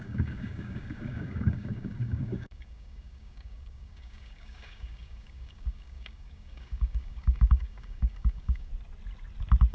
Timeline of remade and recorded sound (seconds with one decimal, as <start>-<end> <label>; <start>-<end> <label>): 0.0-8.7 remade; 8.7-9.7 recorded